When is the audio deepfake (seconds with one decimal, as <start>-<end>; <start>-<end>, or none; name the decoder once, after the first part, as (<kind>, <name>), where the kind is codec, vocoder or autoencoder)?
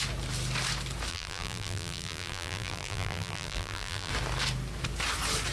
1.1-4.1 (vocoder, BigVGAN v2)